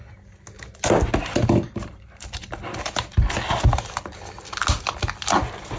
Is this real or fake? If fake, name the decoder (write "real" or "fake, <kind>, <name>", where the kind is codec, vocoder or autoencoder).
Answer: real